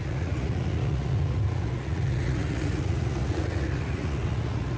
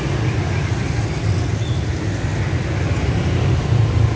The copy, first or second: first